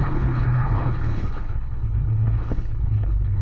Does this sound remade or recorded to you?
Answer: remade